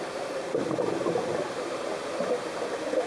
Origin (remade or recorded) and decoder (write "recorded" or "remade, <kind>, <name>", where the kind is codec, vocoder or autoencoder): recorded